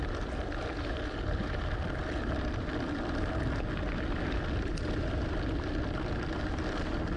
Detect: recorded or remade recorded